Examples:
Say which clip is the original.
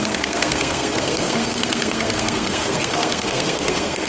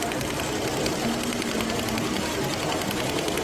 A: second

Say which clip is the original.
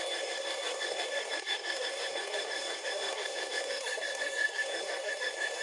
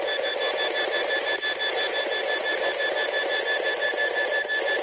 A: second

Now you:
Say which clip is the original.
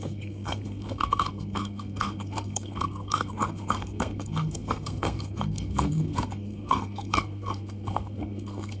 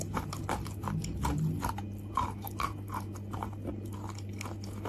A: second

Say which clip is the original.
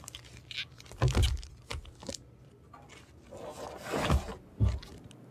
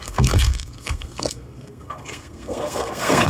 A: first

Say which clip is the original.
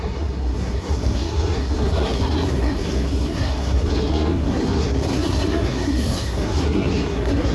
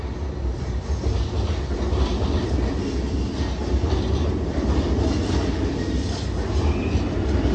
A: second